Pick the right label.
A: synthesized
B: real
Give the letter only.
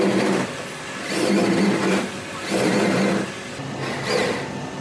B